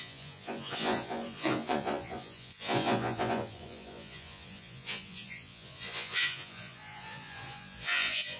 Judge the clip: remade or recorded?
remade